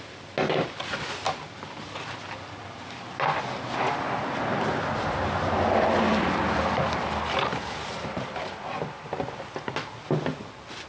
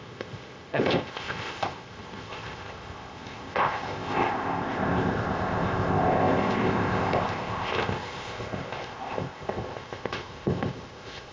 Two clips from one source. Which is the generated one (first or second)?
second